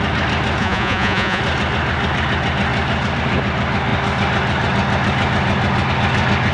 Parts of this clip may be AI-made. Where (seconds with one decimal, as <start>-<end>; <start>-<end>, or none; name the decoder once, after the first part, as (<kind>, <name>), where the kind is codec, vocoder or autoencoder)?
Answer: 0.6-1.4 (vocoder, Vocos)